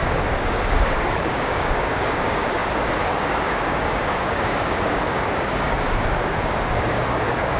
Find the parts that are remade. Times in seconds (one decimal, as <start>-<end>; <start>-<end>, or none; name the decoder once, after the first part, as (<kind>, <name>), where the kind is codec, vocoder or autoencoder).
0.0-7.6 (codec, DAC)